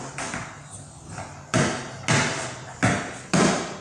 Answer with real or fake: real